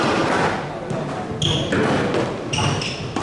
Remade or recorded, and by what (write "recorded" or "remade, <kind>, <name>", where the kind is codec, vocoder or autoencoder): recorded